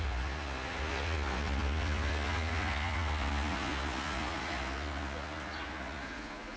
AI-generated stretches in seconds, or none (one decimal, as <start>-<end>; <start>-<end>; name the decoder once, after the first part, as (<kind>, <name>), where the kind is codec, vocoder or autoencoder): 0.0-6.6 (vocoder, Vocos)